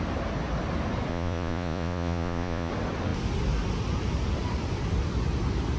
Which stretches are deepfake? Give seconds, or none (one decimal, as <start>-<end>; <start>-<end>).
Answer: 1.1-2.7